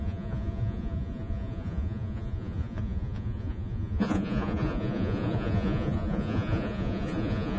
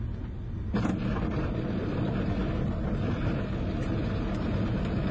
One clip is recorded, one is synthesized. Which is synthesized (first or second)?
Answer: first